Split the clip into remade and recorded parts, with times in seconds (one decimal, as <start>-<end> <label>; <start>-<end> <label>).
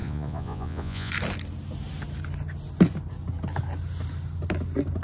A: 0.0-1.1 remade; 1.1-5.0 recorded